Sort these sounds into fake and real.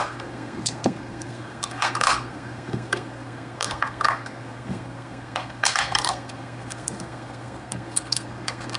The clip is fake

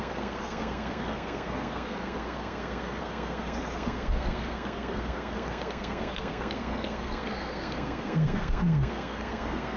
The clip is fake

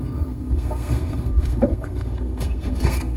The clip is fake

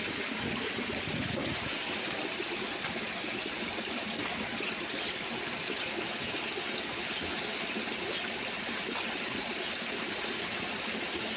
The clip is real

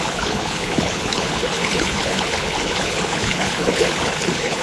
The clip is fake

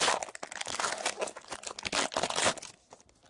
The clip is real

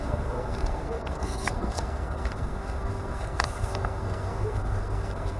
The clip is fake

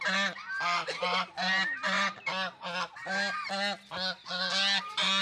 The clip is real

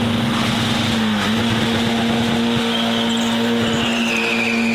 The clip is real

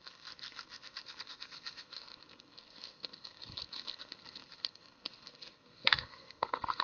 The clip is fake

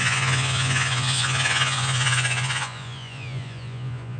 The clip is fake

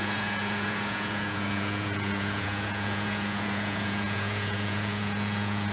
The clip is fake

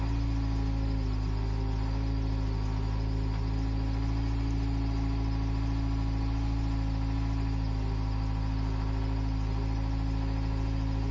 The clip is real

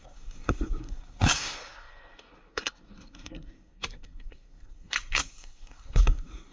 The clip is fake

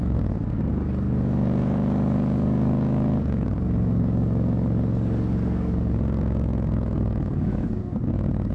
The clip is fake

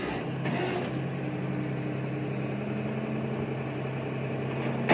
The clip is real